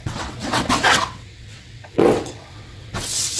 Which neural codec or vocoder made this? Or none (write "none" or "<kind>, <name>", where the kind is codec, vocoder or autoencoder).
vocoder, WaveNeXt